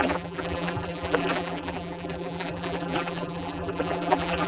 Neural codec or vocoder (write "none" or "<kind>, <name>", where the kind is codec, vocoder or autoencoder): vocoder, BigVGAN v2